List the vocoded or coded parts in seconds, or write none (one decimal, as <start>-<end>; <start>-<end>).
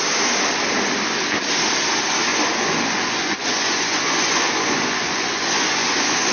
2.3-6.3